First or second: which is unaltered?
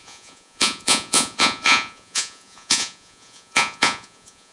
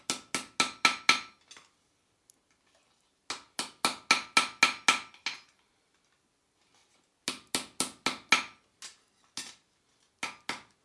second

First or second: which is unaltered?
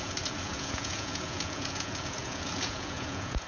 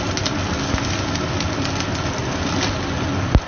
second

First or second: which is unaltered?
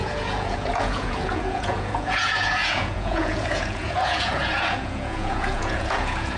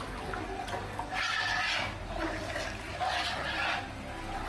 second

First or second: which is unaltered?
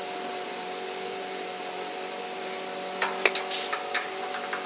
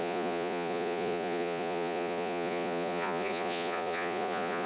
first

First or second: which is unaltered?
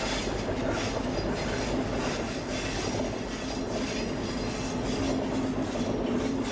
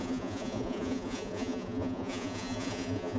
first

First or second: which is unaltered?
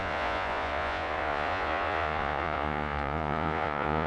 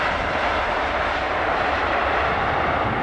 second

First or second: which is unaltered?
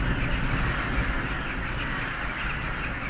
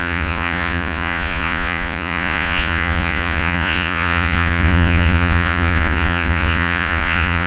first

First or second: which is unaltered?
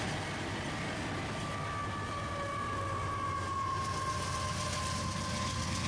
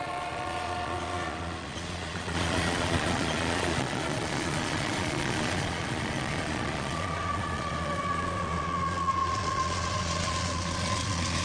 first